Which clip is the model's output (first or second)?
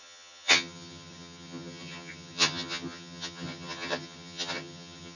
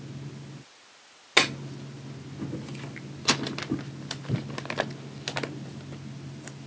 first